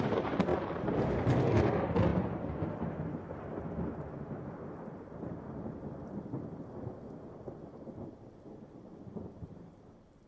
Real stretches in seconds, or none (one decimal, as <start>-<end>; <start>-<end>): 0.0-10.3